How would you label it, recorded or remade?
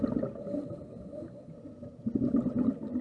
recorded